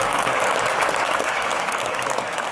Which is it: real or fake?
fake